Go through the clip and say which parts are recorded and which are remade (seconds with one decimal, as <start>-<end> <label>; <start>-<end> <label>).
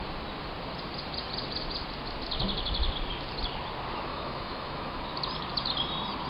0.0-4.1 recorded; 4.1-5.0 remade; 5.0-6.3 recorded